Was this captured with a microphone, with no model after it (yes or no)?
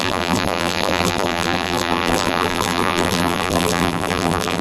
no